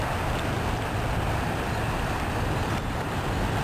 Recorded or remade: recorded